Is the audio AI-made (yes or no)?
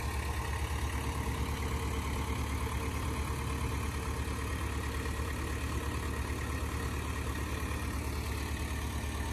no